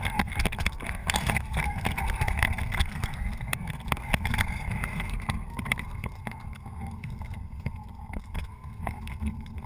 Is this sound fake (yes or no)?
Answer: yes